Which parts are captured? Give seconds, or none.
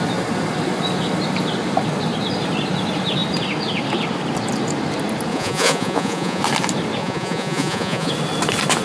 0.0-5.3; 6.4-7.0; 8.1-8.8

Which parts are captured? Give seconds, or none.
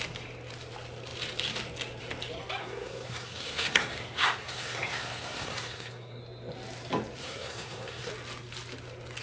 0.0-2.6; 6.2-7.2; 8.1-9.2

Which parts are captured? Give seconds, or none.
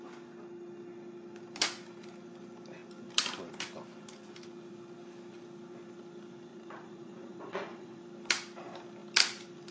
0.0-6.5; 8.0-9.7